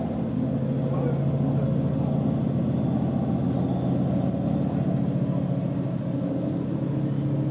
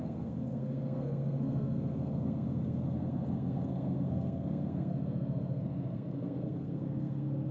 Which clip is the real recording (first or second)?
first